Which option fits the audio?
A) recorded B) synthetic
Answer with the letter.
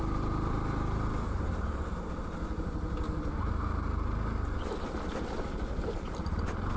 A